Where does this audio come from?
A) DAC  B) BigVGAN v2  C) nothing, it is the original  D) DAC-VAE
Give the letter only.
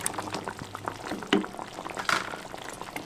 C